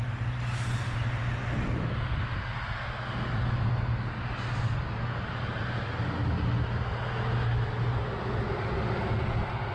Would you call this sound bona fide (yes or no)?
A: yes